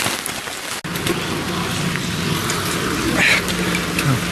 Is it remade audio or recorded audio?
recorded